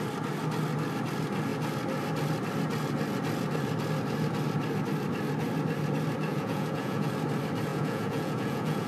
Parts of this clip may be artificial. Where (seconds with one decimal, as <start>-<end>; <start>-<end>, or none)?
6.3-7.1; 7.7-8.9